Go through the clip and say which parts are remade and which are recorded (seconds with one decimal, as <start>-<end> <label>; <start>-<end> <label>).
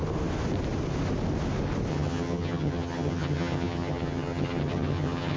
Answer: 0.0-1.9 recorded; 1.9-5.4 remade